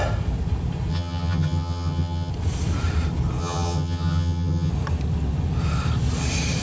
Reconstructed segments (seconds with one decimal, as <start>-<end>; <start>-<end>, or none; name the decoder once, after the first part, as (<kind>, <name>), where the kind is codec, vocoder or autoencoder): 0.9-2.3 (vocoder, HiFi-GAN); 3.4-4.7